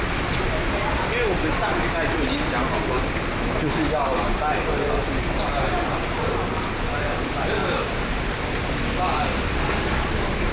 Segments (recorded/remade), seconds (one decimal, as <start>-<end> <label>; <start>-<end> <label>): 0.0-10.5 recorded